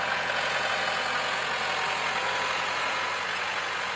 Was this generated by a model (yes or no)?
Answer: yes